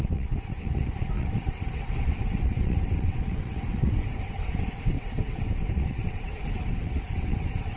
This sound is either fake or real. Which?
fake